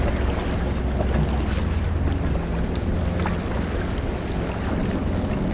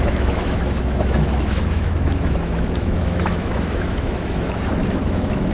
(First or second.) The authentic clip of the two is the first